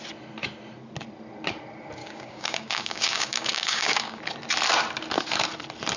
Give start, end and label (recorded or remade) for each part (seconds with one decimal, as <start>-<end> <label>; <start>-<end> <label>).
0.0-2.0 recorded; 2.0-4.2 remade; 4.2-6.0 recorded